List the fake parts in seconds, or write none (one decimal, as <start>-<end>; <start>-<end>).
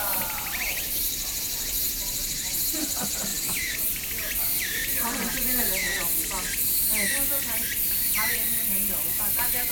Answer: 0.0-5.8; 9.1-9.7